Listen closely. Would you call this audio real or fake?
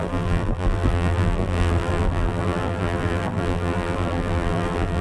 fake